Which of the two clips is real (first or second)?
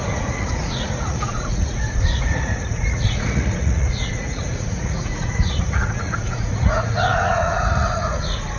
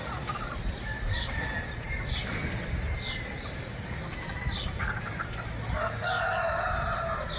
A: second